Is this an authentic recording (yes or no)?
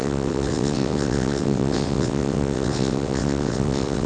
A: no